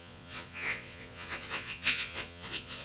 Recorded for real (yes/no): no